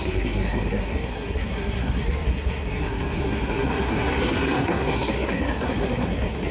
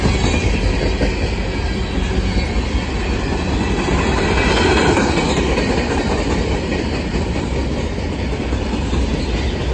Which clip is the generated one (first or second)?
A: first